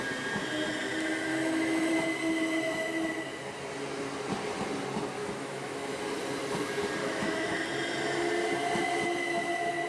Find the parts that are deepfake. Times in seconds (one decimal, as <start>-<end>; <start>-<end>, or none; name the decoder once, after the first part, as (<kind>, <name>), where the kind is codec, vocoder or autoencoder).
1.3-1.9 (autoencoder, DAC-VAE); 5.2-6.0; 7.0-7.6